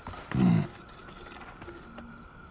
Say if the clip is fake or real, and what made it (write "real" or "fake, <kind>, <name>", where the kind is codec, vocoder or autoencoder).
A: real